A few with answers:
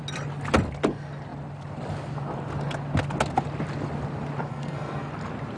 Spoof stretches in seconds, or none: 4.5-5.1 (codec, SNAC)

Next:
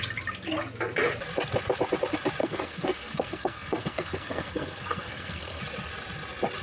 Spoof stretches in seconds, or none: 2.4-5.6 (codec, SNAC)